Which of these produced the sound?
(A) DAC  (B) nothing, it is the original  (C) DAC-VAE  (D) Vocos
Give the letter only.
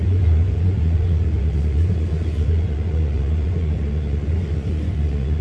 D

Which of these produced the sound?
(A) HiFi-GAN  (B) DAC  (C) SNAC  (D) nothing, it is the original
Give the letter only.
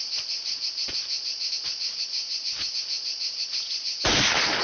D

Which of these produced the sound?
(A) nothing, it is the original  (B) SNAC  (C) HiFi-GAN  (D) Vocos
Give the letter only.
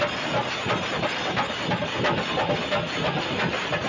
A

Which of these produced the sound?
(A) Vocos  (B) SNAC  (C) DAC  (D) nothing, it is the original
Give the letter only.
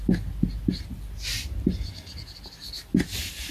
D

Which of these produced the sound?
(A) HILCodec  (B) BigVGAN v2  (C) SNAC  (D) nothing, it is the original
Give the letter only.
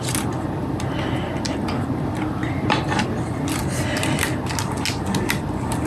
D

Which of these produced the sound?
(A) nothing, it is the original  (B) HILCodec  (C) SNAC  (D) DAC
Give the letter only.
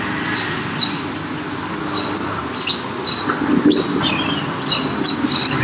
A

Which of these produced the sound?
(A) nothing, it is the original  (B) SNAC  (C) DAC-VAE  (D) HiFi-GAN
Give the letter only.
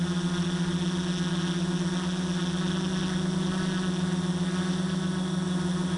A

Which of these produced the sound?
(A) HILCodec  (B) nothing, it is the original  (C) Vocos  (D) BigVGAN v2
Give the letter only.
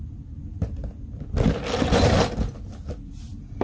B